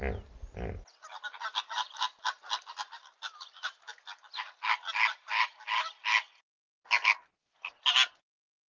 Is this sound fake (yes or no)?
no